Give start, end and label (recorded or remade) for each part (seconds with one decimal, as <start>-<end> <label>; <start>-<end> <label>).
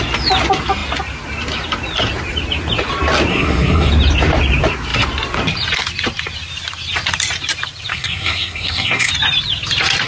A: 0.0-3.3 recorded; 3.3-3.9 remade; 3.9-7.9 recorded; 7.9-9.1 remade; 9.1-10.1 recorded